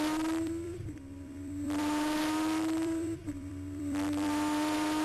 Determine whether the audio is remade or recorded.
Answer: remade